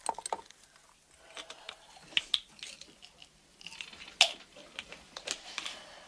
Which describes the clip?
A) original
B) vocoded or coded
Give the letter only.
A